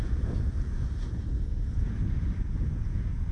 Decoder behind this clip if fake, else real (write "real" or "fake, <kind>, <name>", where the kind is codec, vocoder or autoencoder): fake, vocoder, Vocos